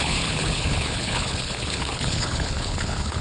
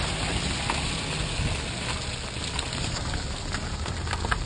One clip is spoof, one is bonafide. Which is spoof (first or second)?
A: first